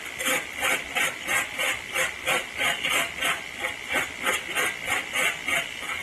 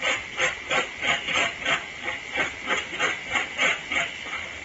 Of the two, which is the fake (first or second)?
second